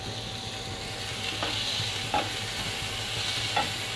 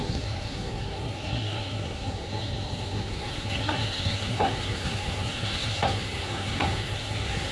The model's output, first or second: second